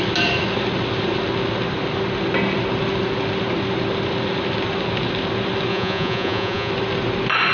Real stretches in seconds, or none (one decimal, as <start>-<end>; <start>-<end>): 0.0-5.7; 6.7-7.5

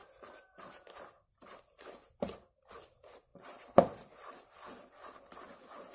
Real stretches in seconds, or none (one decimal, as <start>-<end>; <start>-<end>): 0.0-5.9

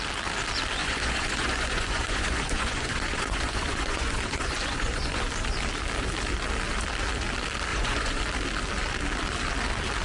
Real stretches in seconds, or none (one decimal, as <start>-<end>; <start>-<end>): 0.0-0.8; 5.2-7.7; 8.2-10.0

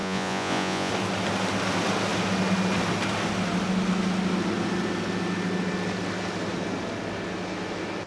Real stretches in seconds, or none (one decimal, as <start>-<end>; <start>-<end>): 0.9-8.1

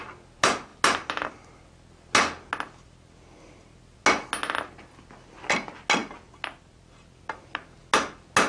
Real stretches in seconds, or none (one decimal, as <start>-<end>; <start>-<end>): 0.0-8.5